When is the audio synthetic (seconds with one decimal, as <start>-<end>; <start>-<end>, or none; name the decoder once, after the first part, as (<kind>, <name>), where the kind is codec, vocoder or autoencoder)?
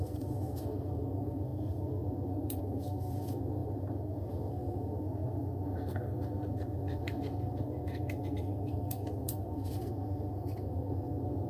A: 0.0-11.5 (codec, SNAC)